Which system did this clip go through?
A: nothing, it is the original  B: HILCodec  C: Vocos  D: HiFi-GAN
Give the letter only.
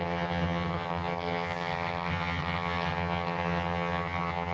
D